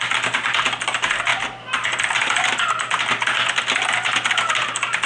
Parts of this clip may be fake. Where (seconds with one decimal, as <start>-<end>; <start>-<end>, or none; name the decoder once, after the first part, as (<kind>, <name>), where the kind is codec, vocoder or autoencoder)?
none